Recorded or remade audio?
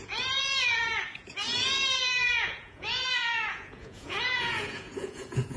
remade